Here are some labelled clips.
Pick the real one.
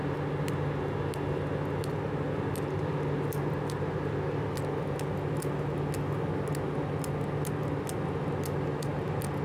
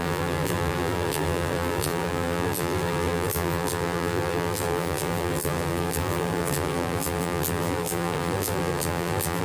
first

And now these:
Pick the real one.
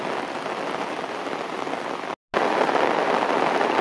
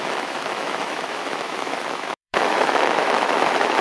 first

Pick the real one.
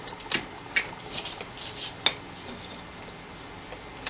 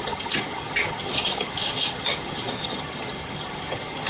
first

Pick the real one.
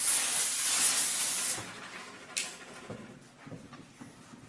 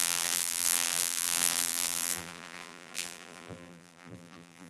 first